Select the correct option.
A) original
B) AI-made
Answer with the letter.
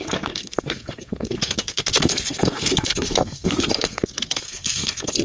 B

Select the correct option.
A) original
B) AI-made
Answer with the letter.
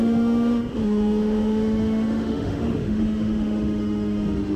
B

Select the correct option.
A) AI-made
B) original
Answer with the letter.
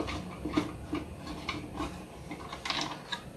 B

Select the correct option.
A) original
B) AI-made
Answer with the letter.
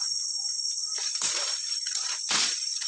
B